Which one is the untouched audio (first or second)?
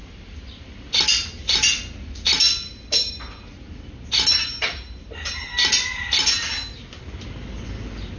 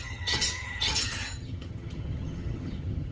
first